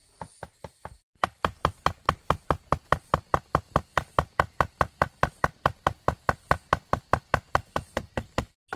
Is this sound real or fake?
real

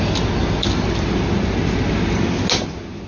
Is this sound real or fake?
real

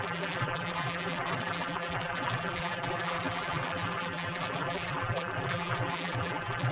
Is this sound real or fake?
fake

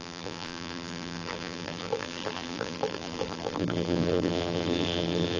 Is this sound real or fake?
fake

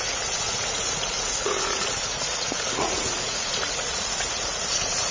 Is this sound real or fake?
fake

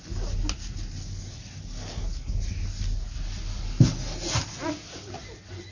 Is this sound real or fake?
real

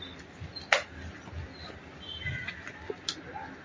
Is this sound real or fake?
real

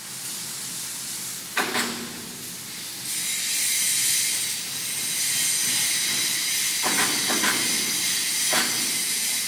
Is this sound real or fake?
real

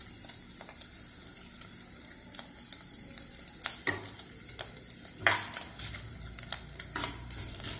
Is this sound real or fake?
real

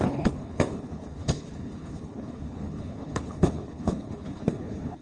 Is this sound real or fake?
fake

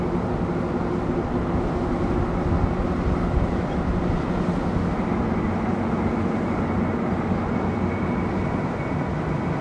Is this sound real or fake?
real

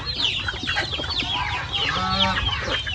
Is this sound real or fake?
real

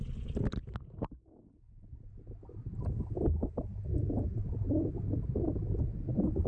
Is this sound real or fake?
real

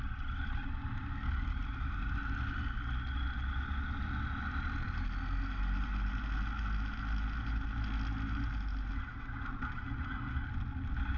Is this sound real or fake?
real